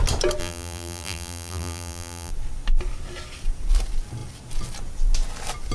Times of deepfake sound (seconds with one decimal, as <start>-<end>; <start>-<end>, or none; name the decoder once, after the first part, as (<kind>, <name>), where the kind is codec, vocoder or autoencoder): 0.4-2.3 (vocoder, BigVGAN v2)